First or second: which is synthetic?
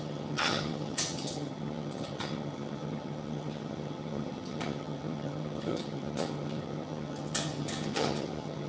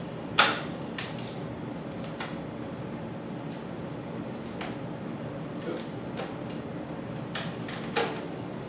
first